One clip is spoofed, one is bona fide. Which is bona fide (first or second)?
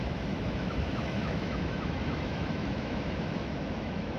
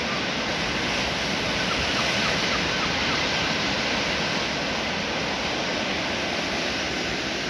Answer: second